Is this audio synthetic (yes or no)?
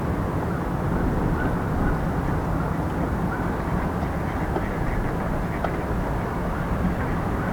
no